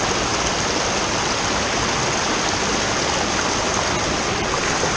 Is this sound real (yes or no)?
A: yes